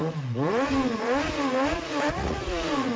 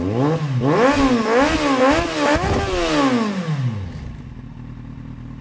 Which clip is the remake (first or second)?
first